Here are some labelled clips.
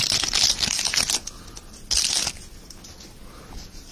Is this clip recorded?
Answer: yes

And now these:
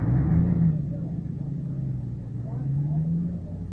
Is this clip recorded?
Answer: yes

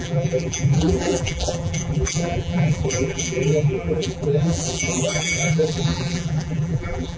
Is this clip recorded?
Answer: no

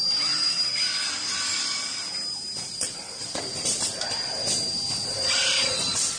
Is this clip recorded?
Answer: no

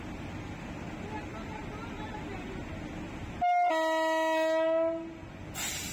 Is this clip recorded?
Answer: yes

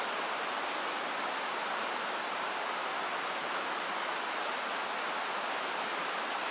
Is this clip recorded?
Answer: yes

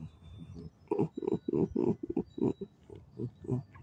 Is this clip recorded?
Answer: yes